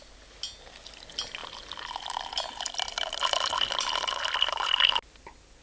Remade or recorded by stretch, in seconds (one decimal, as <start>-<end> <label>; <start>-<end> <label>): 0.0-1.4 recorded; 1.4-4.8 remade; 4.8-5.6 recorded